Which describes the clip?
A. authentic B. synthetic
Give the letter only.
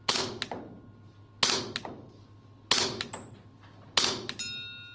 A